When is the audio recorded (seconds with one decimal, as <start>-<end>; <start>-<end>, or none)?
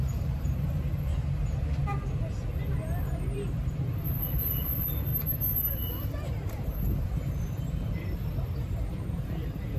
1.1-3.2; 5.1-5.7